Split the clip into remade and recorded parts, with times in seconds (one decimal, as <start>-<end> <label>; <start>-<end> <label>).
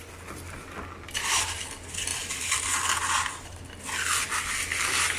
0.0-2.1 recorded; 2.1-3.6 remade; 3.6-5.2 recorded